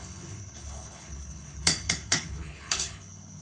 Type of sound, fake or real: fake